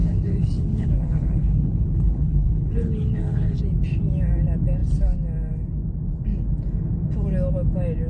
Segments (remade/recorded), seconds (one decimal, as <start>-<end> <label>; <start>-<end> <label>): 0.0-3.6 remade; 3.6-8.1 recorded